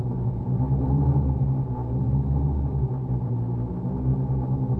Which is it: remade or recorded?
recorded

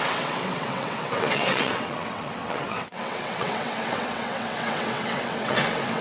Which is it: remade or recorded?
remade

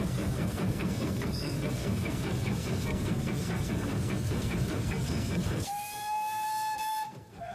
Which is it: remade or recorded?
remade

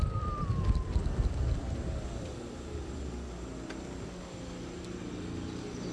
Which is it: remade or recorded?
recorded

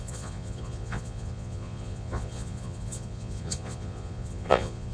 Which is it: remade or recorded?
remade